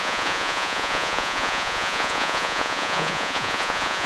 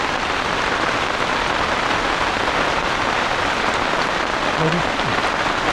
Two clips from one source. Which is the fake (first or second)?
first